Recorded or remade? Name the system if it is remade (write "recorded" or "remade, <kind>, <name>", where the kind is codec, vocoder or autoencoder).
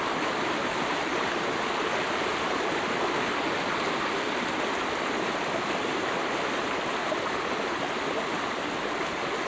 recorded